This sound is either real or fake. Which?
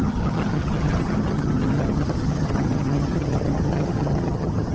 fake